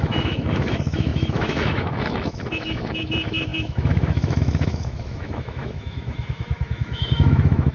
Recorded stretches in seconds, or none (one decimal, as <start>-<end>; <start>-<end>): none